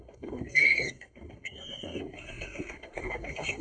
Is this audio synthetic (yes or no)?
yes